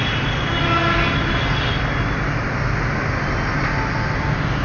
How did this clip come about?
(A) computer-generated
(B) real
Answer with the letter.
B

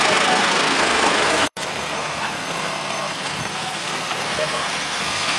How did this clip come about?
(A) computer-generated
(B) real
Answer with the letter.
A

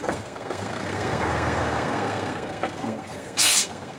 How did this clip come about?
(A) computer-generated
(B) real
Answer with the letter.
A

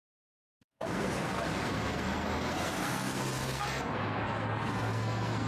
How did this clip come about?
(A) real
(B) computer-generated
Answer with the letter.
B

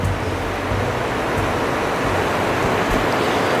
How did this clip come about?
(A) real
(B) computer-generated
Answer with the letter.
A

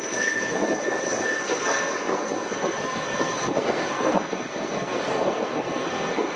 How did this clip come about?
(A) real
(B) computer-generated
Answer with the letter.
B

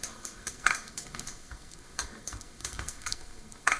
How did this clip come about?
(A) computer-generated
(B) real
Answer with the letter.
A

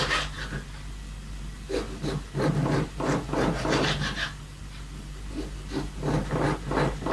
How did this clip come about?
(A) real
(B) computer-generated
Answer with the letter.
A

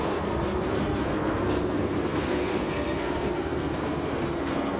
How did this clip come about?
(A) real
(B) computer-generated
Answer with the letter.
B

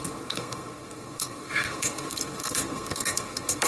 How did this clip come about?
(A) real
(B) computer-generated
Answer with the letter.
B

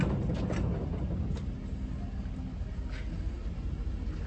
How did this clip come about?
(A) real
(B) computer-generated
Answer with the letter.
A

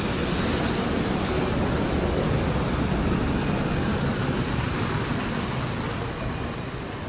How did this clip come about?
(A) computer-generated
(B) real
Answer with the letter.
B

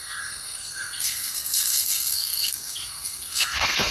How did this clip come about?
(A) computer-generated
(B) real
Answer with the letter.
A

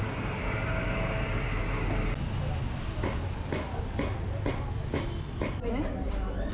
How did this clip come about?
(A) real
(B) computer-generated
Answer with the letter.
A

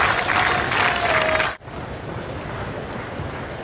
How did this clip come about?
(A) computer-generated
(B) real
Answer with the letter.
B